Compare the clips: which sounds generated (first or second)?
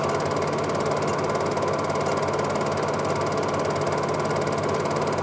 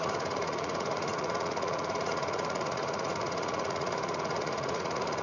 second